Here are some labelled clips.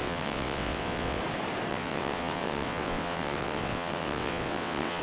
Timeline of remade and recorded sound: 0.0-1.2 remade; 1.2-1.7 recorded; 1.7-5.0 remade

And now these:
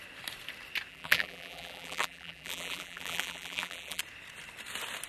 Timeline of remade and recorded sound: 0.0-0.9 recorded; 0.9-4.0 remade; 4.0-5.1 recorded

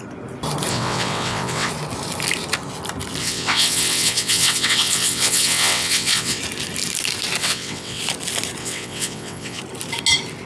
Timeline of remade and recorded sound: 0.0-0.7 recorded; 0.7-1.7 remade; 1.7-3.2 recorded; 3.2-6.4 remade; 6.4-7.4 recorded; 7.4-8.0 remade; 8.0-8.6 recorded; 8.6-9.6 remade; 9.6-10.5 recorded

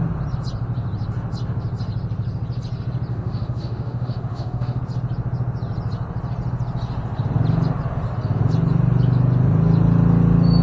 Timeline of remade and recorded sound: 0.0-3.1 recorded; 3.1-4.8 remade; 4.8-10.6 recorded

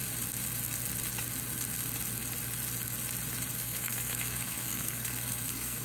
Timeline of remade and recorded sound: 0.0-3.5 recorded; 3.5-5.8 remade

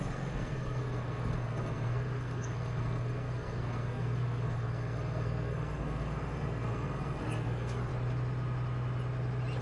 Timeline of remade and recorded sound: 0.0-7.9 remade; 7.9-9.6 recorded